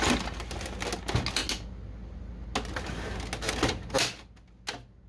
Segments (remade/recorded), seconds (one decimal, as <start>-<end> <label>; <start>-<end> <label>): 0.0-5.1 recorded